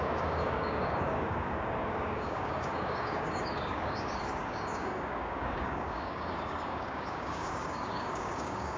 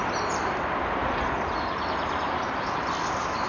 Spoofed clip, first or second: first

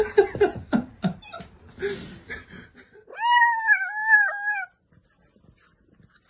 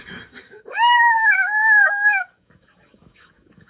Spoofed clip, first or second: second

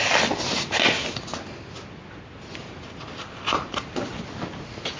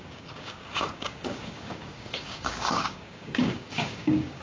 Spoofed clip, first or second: second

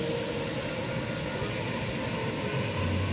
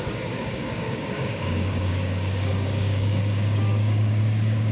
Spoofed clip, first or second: second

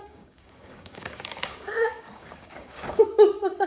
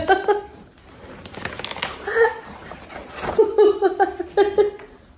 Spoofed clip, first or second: first